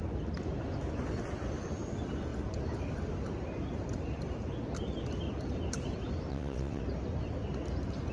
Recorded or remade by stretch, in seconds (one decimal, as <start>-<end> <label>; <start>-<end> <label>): 0.0-6.3 recorded; 6.3-6.8 remade; 6.8-8.1 recorded